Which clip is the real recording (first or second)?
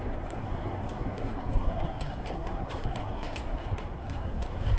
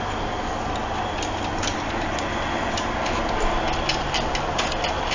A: second